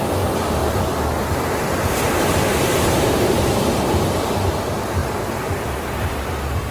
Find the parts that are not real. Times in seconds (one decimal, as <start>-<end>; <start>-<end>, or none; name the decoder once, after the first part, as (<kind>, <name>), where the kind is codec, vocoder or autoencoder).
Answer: 0.6-4.6 (vocoder, BigVGAN v2); 5.0-6.7